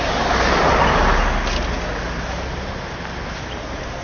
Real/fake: real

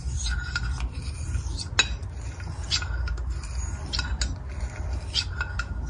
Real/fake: real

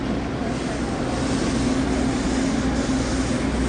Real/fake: real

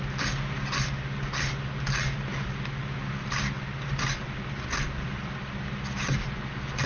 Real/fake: real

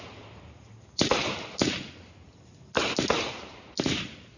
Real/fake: real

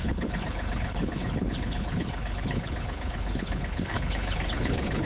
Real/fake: fake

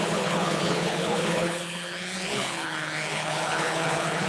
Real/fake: fake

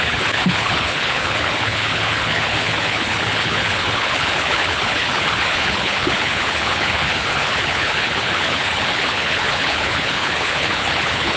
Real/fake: fake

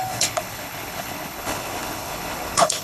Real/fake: fake